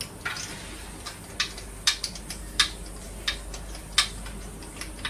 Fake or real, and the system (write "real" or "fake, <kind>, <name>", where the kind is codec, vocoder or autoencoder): real